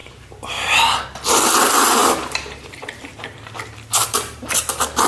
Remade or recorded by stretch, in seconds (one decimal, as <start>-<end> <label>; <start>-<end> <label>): 0.0-2.0 recorded; 2.0-5.1 remade